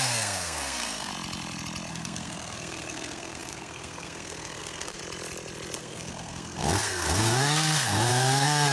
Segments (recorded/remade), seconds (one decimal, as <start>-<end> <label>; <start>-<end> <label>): 0.0-1.1 remade; 1.1-1.9 recorded; 1.9-5.0 remade; 5.0-5.8 recorded; 5.8-8.7 remade